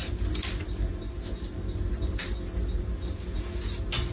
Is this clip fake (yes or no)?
no